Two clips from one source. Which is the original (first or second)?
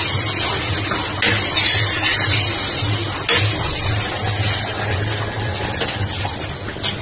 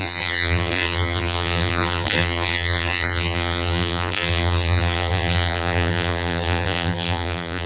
first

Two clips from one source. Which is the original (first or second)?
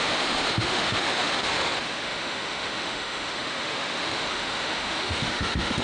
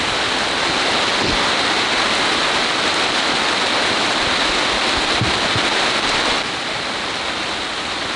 second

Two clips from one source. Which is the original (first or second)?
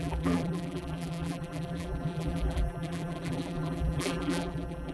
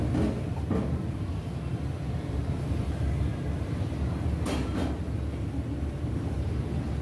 second